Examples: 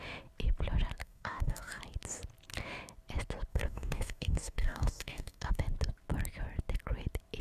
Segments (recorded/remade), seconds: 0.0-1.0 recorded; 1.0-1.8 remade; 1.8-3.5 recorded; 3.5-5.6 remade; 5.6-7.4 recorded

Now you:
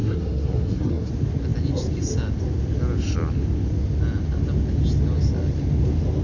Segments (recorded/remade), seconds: 0.0-1.1 remade; 1.1-6.2 recorded

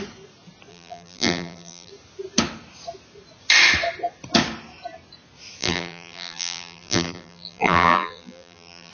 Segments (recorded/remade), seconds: 0.0-0.7 recorded; 0.7-1.9 remade; 1.9-5.6 recorded; 5.6-8.9 remade

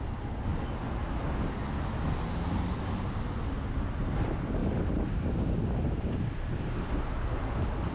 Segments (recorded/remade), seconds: 0.0-4.6 recorded; 4.6-6.8 remade; 6.8-7.9 recorded

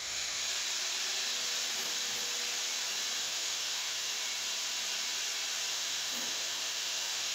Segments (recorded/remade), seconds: 0.0-0.4 remade; 0.4-3.2 recorded; 3.2-4.1 remade; 4.1-5.7 recorded; 5.7-7.3 remade